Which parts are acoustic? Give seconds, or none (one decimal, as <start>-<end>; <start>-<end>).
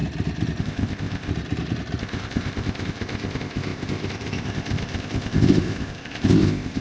0.0-0.6; 1.3-2.0